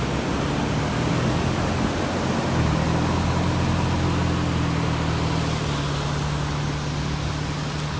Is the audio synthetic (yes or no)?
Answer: no